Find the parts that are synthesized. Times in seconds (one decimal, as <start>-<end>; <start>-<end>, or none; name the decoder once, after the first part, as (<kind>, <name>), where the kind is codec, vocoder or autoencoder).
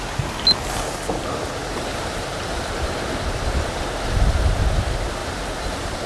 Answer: 1.6-3.7 (vocoder, BigVGAN v2); 5.2-6.1